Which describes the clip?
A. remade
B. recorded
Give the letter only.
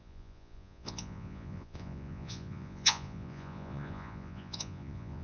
A